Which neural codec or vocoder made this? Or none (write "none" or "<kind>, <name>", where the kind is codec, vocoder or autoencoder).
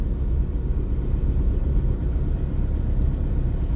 none